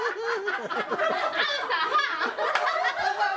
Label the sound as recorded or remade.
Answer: recorded